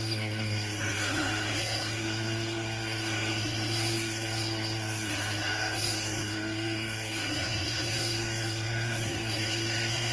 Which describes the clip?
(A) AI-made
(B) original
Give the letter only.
A